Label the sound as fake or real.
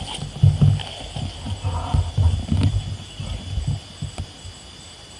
real